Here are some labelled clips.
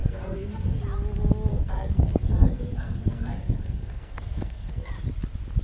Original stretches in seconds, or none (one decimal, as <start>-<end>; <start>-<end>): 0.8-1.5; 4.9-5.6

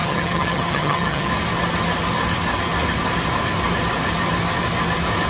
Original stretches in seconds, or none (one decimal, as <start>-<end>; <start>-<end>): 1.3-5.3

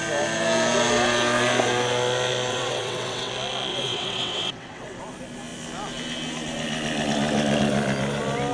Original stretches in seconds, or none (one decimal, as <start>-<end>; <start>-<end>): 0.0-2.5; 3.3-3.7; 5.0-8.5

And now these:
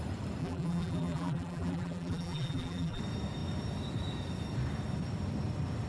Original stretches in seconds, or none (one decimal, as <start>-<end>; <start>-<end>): 0.0-0.4; 3.0-5.9

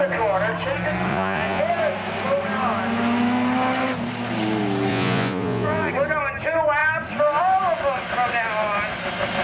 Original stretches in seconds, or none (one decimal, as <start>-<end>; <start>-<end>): 0.0-1.1; 1.6-4.9; 5.9-9.4